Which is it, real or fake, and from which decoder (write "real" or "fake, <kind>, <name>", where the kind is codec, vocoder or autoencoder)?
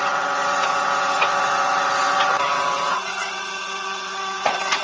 fake, vocoder, WaveNeXt